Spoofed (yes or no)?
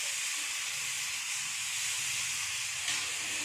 no